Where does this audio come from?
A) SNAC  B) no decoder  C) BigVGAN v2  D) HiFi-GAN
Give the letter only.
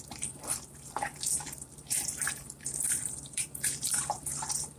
C